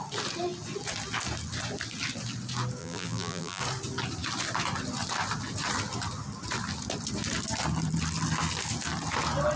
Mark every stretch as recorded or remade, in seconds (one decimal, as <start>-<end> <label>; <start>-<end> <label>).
0.0-2.8 recorded; 2.8-3.6 remade; 3.6-9.6 recorded